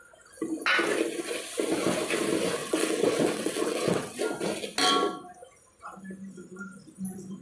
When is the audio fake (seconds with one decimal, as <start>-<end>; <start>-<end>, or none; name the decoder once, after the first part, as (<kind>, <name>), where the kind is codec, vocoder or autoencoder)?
2.6-4.2 (vocoder, WaveNeXt)